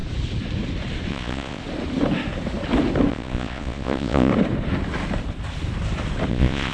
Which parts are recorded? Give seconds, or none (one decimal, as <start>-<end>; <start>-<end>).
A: 0.0-1.1; 1.6-3.1; 4.3-6.3

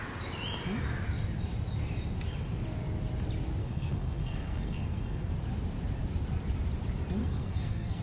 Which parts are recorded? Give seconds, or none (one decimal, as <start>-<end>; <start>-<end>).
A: 0.0-3.6; 5.3-7.2

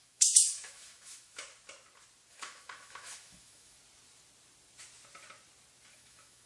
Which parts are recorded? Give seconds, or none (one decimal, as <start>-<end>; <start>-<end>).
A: 1.4-2.3; 3.8-5.9

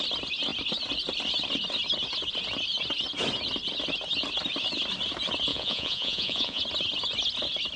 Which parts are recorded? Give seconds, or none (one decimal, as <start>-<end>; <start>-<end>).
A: 0.0-5.5; 6.6-7.8

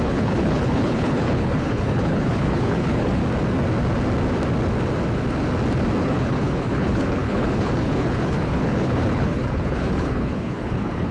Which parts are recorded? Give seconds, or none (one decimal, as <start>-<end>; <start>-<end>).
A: 3.2-6.0

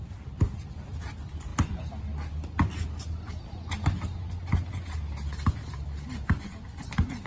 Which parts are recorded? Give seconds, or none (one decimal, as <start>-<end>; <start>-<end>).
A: 0.0-7.3

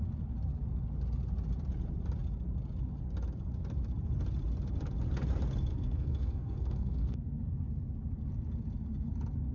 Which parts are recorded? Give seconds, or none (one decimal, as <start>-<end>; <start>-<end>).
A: 0.0-5.7; 7.4-9.5